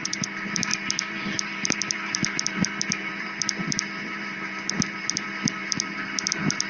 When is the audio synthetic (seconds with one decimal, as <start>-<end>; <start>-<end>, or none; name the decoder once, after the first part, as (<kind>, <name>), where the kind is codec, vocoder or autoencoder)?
0.0-6.7 (vocoder, BigVGAN v2)